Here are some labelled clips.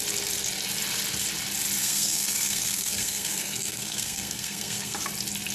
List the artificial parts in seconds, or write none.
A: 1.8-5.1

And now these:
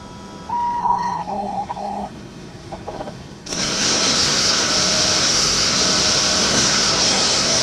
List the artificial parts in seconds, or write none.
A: 0.8-4.7; 5.2-5.8; 6.4-7.6